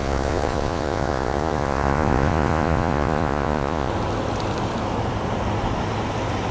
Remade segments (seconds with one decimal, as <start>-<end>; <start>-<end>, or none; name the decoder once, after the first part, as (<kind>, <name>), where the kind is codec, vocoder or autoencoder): 0.0-3.9 (vocoder, Vocos)